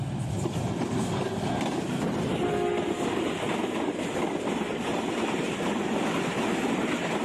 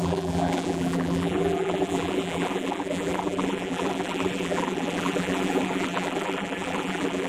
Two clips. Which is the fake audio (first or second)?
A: second